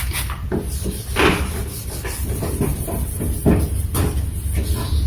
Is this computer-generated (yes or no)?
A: no